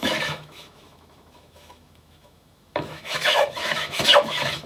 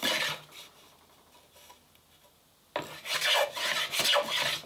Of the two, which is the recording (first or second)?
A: second